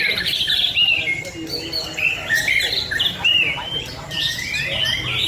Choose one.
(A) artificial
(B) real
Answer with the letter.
B